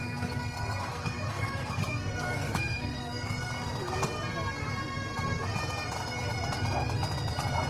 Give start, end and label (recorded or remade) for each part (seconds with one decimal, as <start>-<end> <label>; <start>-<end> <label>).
0.0-3.4 remade; 3.4-7.7 recorded